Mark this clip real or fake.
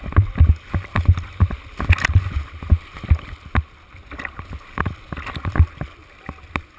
real